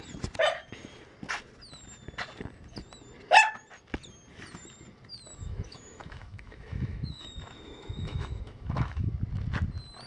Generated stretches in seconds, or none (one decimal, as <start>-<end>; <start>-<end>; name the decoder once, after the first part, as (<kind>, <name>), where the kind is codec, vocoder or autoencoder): 5.4-9.1 (autoencoder, DAC-VAE)